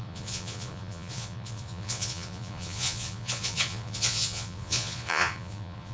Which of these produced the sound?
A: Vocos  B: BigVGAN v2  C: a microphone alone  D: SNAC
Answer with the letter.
A